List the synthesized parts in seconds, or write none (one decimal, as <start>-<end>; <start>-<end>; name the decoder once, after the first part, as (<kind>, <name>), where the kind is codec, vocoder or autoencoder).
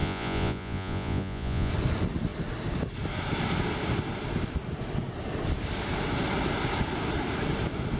0.0-1.7 (vocoder, Vocos)